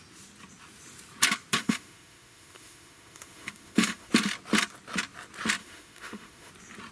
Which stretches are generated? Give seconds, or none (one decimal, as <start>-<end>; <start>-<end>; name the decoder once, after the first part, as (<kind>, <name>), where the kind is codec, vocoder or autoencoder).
1.6-4.1 (autoencoder, DAC-VAE); 5.6-6.5